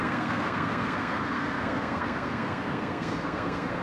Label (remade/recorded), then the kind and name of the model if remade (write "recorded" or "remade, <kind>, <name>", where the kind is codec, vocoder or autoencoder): remade, codec, SNAC